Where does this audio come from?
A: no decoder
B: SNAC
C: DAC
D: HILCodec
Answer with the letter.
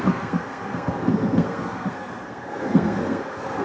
B